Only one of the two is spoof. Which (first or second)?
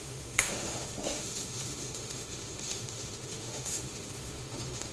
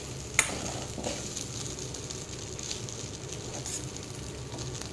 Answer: first